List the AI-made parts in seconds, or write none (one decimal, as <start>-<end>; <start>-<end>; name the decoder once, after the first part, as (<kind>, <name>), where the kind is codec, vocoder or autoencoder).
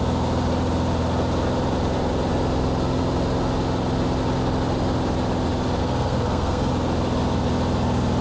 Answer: 5.8-6.7 (codec, SNAC)